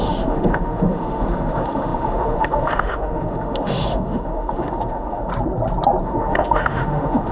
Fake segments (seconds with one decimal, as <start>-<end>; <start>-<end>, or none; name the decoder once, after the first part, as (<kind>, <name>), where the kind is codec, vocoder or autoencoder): 0.0-5.3 (autoencoder, DAC-VAE); 6.0-7.3